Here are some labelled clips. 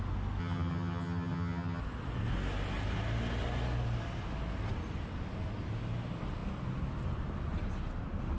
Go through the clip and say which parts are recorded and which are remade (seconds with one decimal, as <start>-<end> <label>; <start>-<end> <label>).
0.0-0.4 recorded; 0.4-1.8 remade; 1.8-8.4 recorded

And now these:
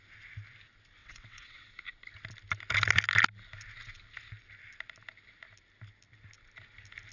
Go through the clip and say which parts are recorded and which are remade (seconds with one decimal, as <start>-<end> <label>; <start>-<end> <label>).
0.0-1.0 recorded; 1.0-1.7 remade; 1.7-7.1 recorded

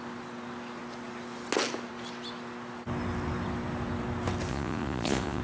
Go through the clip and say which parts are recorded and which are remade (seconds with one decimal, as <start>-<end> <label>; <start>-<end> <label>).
0.0-4.5 recorded; 4.5-5.4 remade

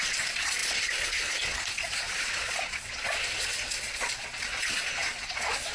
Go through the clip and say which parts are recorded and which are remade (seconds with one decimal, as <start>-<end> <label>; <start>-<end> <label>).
0.0-5.7 remade

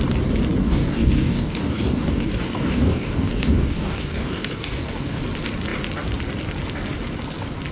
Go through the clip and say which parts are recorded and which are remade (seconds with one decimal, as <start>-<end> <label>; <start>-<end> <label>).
0.0-0.6 recorded; 0.6-5.2 remade; 5.2-7.7 recorded